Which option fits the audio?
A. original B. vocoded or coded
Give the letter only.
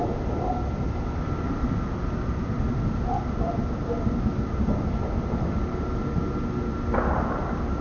A